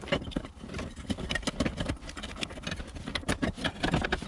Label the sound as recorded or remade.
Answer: recorded